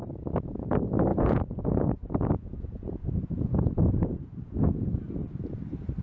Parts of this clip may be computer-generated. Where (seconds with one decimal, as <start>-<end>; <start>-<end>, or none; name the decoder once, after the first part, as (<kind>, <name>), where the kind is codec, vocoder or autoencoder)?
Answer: 1.1-4.7 (vocoder, Vocos)